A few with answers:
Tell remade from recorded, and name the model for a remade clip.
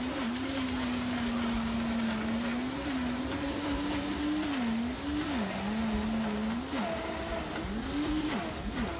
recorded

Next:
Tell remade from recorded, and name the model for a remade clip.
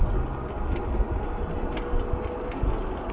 recorded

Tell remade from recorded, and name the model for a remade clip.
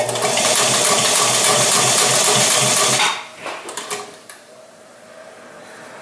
recorded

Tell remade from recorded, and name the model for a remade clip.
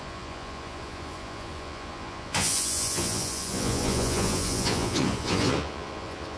remade, vocoder, Vocos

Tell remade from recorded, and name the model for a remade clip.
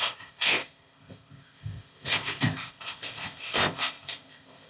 remade, codec, ZipCodec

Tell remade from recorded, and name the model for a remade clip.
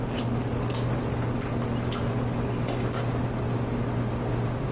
recorded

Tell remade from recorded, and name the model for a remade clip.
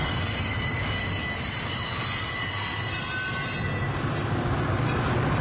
recorded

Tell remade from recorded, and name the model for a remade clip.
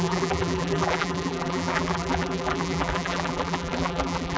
remade, vocoder, BigVGAN v2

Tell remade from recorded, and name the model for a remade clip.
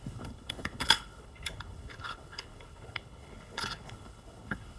remade, codec, HILCodec